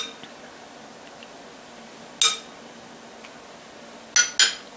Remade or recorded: recorded